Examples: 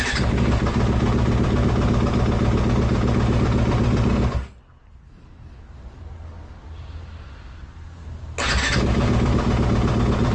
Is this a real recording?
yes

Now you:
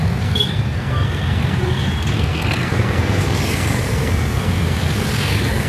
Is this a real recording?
no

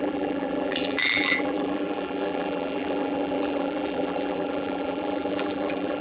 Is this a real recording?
no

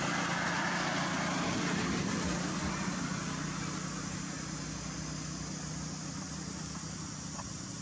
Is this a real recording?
yes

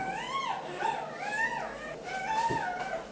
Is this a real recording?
yes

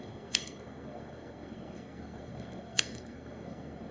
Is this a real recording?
no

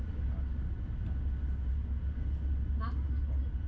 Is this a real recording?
yes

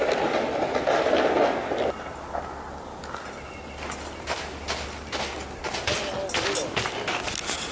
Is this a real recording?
yes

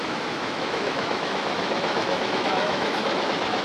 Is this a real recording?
no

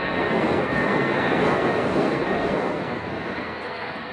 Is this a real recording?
no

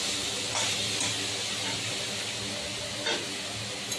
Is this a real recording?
yes